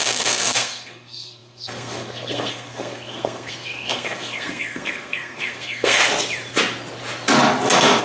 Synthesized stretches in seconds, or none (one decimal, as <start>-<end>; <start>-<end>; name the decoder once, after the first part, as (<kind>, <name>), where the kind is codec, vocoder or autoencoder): 0.0-6.0 (codec, SNAC)